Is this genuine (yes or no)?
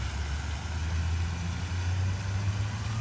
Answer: yes